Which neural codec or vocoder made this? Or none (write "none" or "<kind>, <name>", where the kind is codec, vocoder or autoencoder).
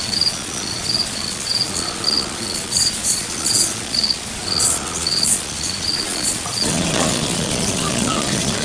vocoder, Vocos